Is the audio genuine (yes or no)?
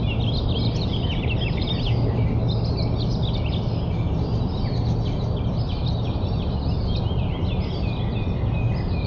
yes